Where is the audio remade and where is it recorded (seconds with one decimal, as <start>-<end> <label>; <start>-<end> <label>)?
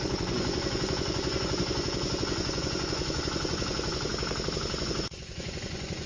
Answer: 0.0-4.1 remade; 4.1-4.8 recorded; 4.8-6.1 remade